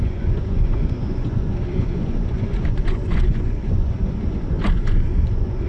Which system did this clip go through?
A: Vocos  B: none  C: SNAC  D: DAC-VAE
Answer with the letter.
A